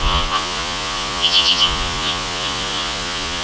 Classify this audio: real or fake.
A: fake